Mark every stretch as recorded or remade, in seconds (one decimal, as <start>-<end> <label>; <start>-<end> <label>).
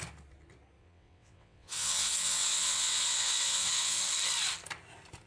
0.0-0.8 recorded; 0.8-4.0 remade; 4.0-5.3 recorded